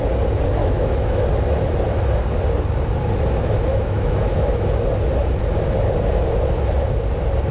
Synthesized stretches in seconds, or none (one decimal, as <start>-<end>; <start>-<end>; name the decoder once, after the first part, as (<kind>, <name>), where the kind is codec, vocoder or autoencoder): 0.6-1.2 (autoencoder, DAC-VAE); 3.7-4.7